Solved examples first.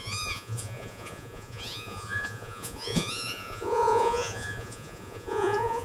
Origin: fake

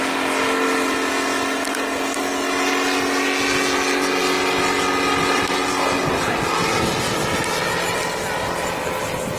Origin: real